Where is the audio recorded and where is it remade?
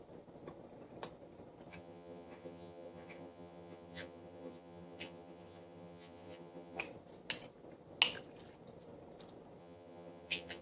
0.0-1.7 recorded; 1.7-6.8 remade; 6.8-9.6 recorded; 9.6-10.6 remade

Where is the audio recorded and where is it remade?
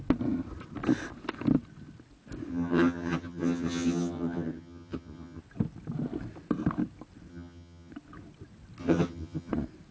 0.0-2.5 recorded; 2.5-5.4 remade; 5.4-7.3 recorded; 7.3-7.9 remade; 7.9-8.8 recorded; 8.8-9.5 remade; 9.5-9.9 recorded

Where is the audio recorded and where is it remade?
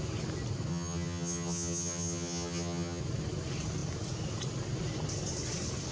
0.0-0.7 recorded; 0.7-3.0 remade; 3.0-5.9 recorded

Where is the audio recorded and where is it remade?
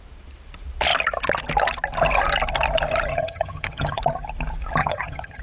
0.0-3.1 recorded; 3.1-4.0 remade; 4.0-4.8 recorded; 4.8-5.4 remade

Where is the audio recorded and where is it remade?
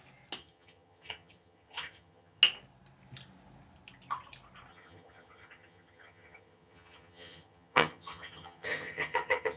0.0-0.4 recorded; 0.4-2.4 remade; 2.4-4.7 recorded; 4.7-9.6 remade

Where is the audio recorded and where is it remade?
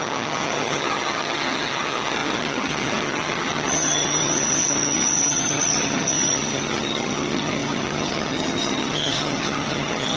0.0-10.2 remade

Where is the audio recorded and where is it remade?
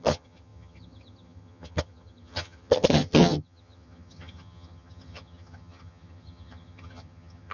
0.0-7.5 remade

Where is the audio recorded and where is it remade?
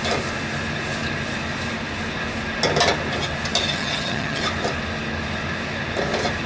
0.0-3.7 recorded; 3.7-4.4 remade; 4.4-6.5 recorded